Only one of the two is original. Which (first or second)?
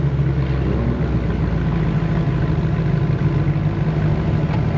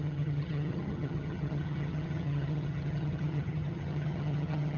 first